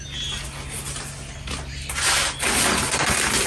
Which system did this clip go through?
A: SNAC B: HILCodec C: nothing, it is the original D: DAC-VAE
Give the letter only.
C